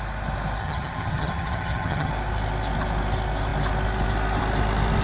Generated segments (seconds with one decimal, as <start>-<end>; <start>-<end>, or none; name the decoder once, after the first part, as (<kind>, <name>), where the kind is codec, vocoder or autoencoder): 0.6-2.1 (vocoder, HiFi-GAN)